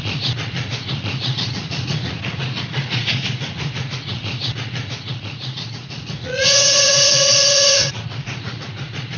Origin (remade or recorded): remade